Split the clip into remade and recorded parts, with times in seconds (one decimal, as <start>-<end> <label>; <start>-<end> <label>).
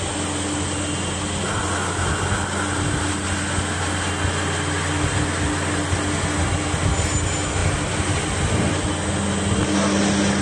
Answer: 0.0-10.4 recorded